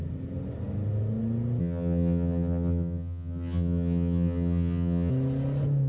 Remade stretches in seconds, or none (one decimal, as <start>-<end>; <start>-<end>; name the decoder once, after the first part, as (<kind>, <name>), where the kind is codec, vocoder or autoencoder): 1.6-5.1 (vocoder, HiFi-GAN)

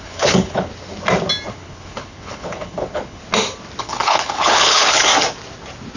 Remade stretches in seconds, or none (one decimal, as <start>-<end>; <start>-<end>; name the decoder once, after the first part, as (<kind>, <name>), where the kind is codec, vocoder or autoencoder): 0.0-0.7 (codec, HILCodec); 1.5-3.2; 3.8-5.1

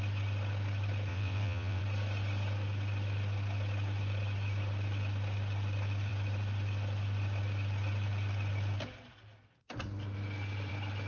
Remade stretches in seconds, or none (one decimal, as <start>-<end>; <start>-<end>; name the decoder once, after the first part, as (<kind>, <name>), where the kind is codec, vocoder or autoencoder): 1.1-1.8 (vocoder, WaveNeXt)